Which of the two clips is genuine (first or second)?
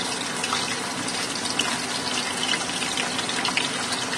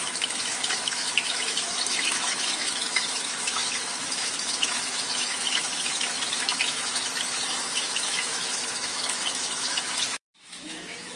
first